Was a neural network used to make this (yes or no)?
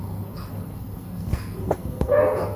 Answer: yes